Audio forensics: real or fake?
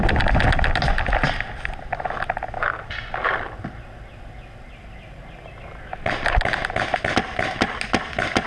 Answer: real